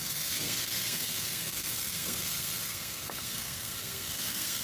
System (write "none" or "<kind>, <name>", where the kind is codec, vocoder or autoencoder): codec, SNAC